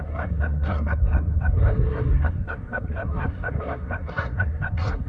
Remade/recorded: remade